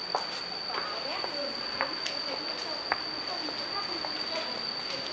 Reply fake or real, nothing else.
real